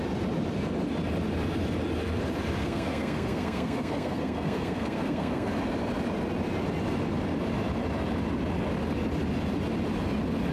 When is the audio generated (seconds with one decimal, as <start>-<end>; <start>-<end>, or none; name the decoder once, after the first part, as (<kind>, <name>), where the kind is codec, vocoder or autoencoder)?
2.6-5.5 (codec, SNAC)